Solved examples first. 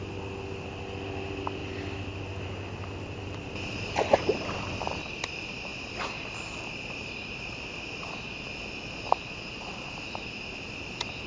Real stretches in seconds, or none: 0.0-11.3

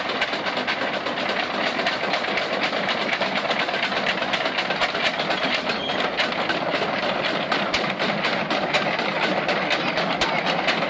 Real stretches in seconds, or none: 0.0-10.9